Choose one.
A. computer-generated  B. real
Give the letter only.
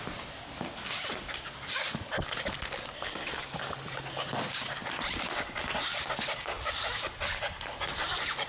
B